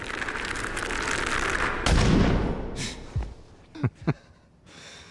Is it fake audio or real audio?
real